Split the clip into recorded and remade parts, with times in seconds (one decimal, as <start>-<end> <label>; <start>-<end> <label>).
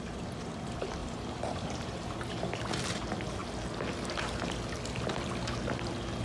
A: 0.0-1.0 recorded; 1.0-2.3 remade; 2.3-6.2 recorded